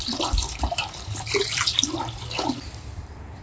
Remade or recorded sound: remade